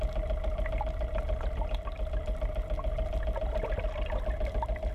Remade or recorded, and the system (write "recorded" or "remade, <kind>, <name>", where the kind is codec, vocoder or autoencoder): recorded